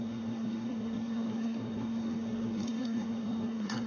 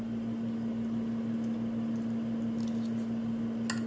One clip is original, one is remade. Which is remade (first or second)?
first